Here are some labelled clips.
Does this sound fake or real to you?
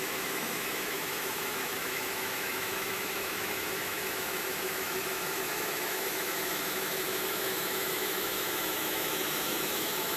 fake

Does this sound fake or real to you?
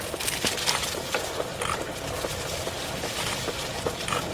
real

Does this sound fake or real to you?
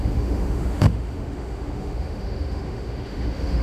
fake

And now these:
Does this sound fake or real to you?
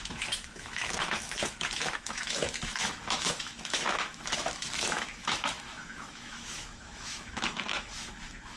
fake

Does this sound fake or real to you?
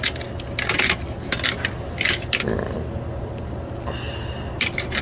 real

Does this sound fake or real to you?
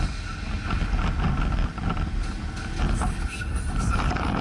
real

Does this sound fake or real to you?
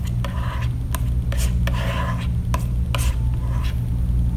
real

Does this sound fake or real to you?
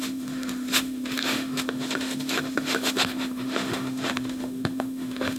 fake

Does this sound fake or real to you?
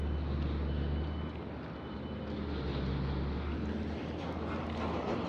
real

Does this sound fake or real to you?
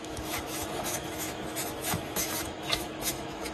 fake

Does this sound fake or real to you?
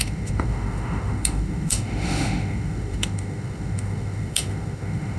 fake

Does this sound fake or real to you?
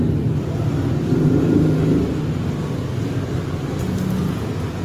real